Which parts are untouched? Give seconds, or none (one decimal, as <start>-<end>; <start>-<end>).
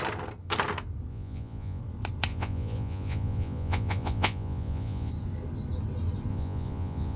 0.0-1.1; 1.8-2.3; 5.1-6.3